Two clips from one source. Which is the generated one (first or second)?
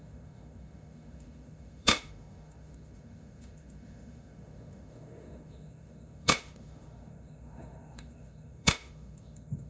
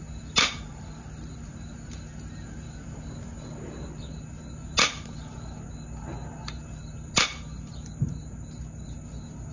first